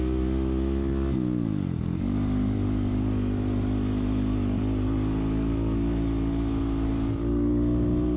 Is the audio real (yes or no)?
yes